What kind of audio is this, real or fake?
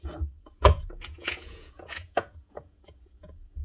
fake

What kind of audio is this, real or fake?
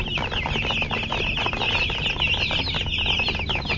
real